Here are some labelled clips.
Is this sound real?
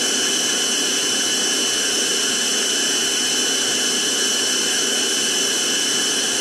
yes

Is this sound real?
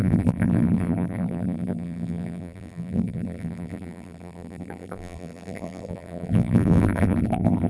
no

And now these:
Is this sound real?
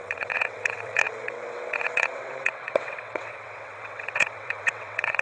no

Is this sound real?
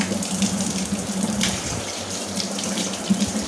no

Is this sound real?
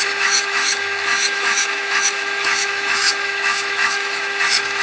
no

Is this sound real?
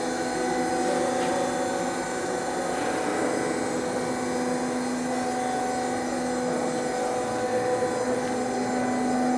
yes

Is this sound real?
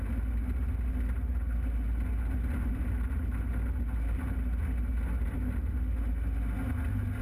yes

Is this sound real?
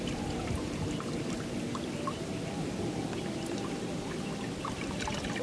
yes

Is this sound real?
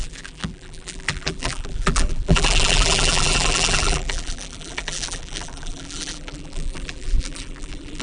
no